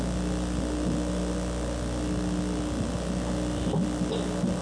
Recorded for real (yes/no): yes